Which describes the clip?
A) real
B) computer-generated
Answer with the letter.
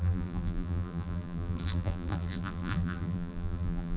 B